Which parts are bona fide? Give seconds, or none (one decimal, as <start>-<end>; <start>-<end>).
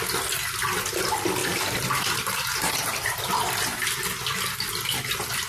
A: 0.0-1.4; 3.3-5.5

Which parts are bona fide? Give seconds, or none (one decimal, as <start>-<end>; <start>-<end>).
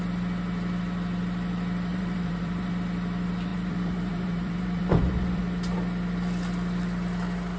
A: 0.0-1.9; 2.7-3.5; 5.4-7.6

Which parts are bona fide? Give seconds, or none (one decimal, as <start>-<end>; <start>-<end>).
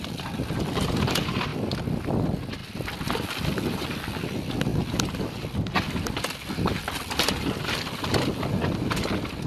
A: 0.0-9.5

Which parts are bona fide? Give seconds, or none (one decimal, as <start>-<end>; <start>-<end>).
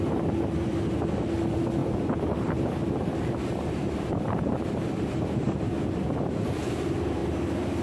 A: 0.0-1.8; 5.7-7.8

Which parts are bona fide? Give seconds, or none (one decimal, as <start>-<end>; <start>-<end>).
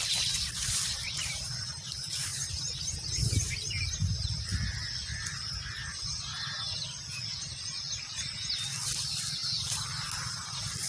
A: 0.0-0.9; 1.9-10.9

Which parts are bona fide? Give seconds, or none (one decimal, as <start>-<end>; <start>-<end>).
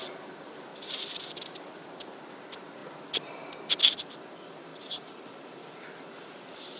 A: 0.0-0.7; 1.4-4.7; 5.4-6.8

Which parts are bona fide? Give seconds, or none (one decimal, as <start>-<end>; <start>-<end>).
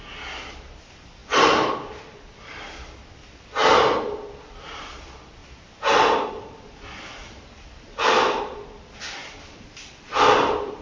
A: 1.2-2.0; 3.6-4.3; 5.4-6.3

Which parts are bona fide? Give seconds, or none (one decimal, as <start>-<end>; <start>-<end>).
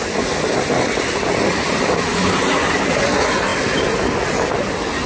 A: 0.0-2.1; 2.6-5.1